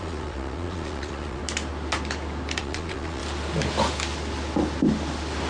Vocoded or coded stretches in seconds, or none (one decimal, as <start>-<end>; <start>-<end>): 0.0-1.4; 2.6-3.2